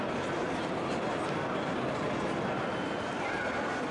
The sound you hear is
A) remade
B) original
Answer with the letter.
B